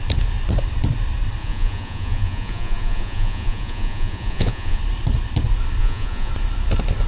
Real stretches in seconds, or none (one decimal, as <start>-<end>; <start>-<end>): 0.0-1.4; 4.8-5.8; 6.3-7.1